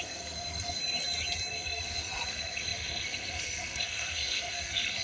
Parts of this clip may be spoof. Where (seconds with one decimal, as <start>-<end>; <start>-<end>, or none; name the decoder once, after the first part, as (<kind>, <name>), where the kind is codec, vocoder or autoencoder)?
0.0-0.8 (codec, SNAC); 1.5-5.0